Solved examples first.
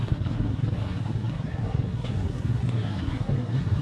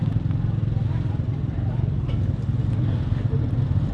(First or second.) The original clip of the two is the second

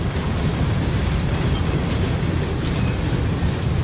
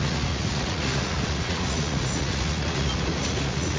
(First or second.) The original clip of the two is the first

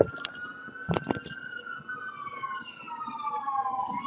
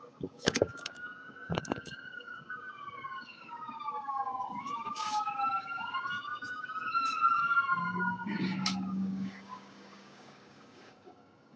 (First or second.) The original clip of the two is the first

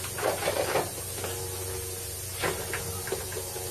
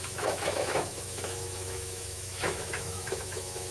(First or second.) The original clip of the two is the first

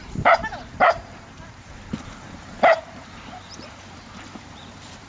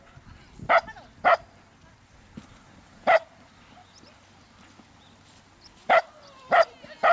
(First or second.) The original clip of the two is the second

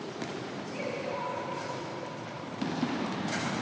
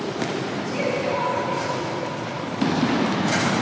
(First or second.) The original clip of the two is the second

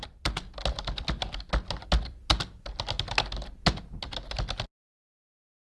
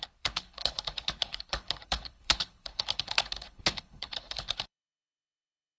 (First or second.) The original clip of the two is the first